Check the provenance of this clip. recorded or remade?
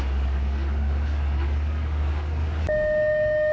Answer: remade